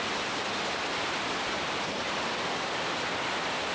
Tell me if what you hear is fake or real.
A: real